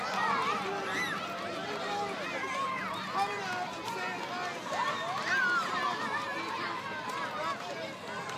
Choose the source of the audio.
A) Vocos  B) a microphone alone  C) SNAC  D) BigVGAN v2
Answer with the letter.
B